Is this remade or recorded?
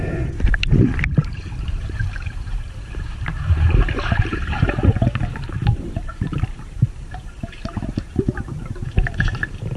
remade